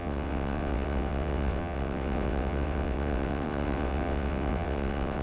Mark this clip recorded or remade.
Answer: remade